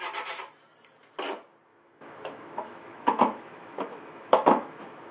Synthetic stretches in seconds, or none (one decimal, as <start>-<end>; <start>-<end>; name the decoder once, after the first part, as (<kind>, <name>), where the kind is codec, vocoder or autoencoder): 1.7-5.1 (autoencoder, DAC-VAE)